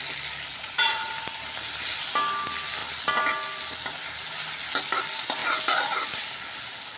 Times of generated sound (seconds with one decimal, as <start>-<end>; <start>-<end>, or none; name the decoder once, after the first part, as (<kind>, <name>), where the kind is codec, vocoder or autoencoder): 0.5-1.1 (vocoder, Vocos)